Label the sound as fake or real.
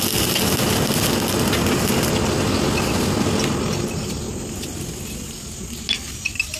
real